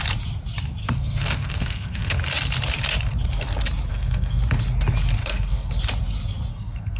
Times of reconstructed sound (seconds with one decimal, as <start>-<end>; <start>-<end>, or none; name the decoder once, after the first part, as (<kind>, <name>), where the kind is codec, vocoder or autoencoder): 0.8-2.2 (codec, SNAC); 3.9-4.4; 5.2-5.7; 6.5-7.0